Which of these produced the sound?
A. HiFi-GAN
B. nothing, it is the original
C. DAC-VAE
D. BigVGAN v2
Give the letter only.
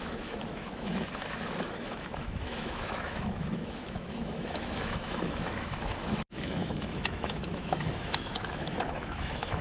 C